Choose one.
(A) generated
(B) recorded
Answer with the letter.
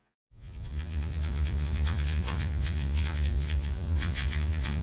A